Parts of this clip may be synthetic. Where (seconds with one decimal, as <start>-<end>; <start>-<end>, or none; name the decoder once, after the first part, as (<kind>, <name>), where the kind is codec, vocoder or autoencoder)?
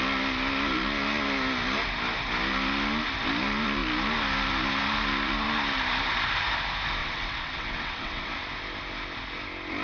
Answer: 7.0-8.3 (vocoder, WaveNeXt)